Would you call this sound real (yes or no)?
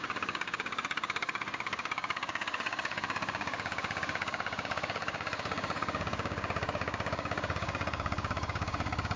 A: no